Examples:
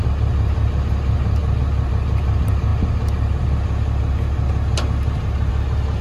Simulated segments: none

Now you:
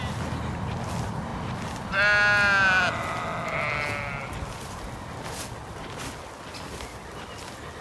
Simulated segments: none

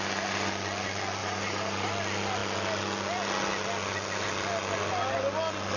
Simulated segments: 1.2-1.9 (vocoder, BigVGAN v2)

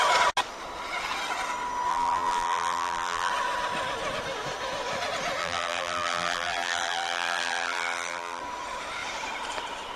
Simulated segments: 1.9-3.3 (vocoder, BigVGAN v2); 5.4-8.4